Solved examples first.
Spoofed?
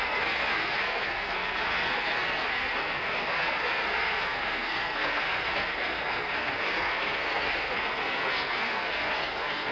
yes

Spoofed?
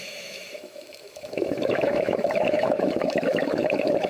yes